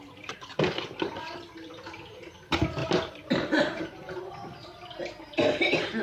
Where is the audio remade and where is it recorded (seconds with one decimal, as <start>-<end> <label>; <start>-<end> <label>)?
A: 0.0-2.8 recorded; 2.8-4.2 remade; 4.2-6.0 recorded